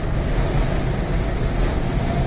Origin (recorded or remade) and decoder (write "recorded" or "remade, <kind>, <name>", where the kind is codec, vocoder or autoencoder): recorded